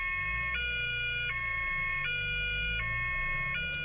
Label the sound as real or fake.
real